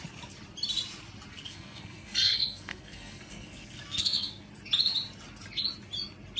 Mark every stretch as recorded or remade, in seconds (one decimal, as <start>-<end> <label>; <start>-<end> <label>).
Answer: 0.0-1.3 recorded; 1.3-4.5 remade; 4.5-6.4 recorded